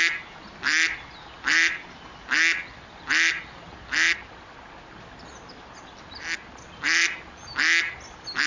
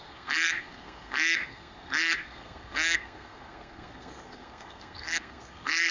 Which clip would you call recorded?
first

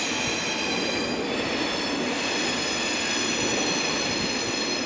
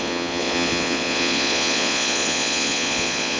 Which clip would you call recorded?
first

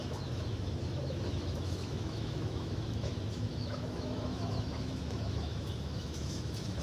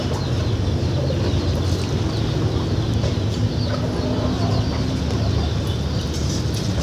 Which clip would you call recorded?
second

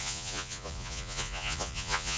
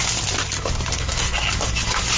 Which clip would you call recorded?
second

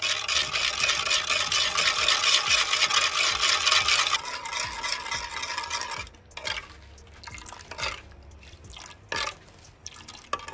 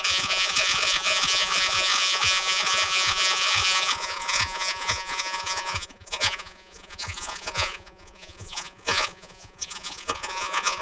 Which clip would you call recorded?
first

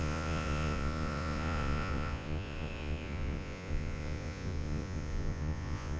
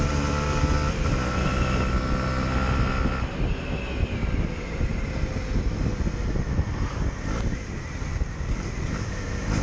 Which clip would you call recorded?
second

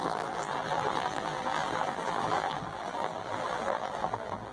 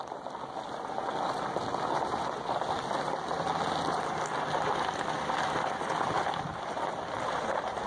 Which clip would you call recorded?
second